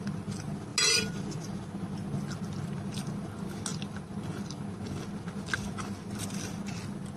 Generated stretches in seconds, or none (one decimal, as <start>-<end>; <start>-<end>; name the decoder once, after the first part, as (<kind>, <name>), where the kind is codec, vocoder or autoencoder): none